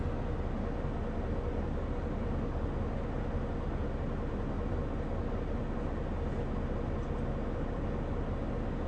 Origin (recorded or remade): recorded